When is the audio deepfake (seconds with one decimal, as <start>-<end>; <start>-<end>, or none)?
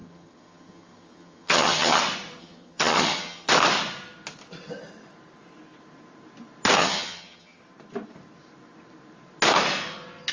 0.0-2.0; 2.4-3.5; 6.8-7.6